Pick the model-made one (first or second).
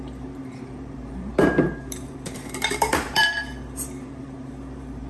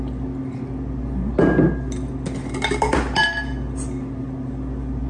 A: first